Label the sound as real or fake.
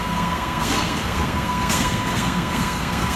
fake